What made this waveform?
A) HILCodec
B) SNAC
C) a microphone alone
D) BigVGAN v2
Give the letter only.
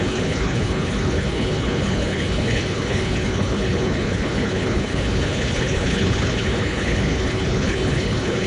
A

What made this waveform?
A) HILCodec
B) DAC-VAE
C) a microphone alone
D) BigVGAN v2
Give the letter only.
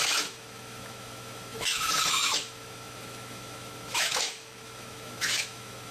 B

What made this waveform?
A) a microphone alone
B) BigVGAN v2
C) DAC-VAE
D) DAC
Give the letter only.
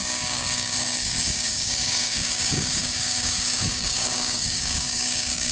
D